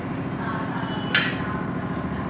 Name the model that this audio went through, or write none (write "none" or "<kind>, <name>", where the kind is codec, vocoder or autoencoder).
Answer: none